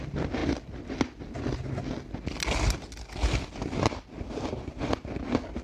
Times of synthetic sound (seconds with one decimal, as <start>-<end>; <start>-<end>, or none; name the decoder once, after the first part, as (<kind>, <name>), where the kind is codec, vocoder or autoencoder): none